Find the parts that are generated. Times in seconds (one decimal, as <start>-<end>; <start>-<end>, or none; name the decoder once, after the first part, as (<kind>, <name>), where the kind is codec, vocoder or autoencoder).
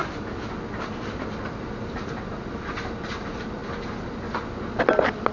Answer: none